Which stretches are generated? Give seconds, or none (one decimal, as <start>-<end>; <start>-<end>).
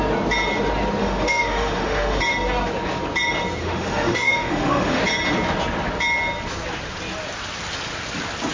1.0-2.2; 3.6-5.0